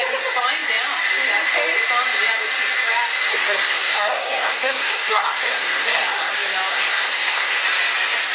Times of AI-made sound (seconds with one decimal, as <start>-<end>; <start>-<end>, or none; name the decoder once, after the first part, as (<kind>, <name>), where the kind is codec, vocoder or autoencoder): 3.3-6.3 (codec, SNAC); 6.7-7.6